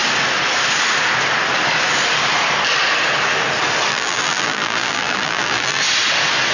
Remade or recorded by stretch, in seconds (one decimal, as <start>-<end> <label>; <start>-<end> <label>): 0.0-3.9 recorded; 3.9-5.8 remade; 5.8-6.5 recorded

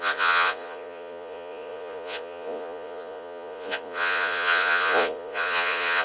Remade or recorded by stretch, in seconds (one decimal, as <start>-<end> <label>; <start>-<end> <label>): 0.0-6.0 remade

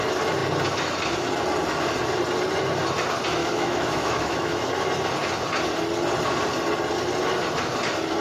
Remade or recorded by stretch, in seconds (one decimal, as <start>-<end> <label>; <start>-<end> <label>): 0.0-3.4 recorded; 3.4-4.7 remade; 4.7-8.2 recorded

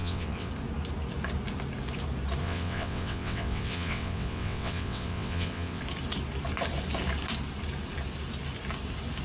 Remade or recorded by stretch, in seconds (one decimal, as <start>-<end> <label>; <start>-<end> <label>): 0.0-0.5 remade; 0.5-2.4 recorded; 2.4-5.8 remade; 5.8-9.2 recorded

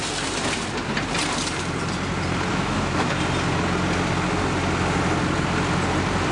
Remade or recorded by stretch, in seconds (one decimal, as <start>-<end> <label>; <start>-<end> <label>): 0.0-2.5 recorded; 2.5-3.1 remade; 3.1-6.3 recorded